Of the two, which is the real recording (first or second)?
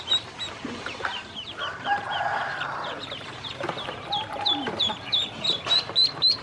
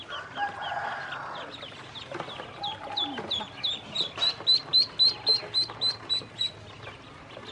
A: second